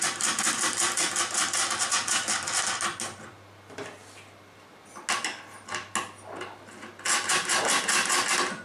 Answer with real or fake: real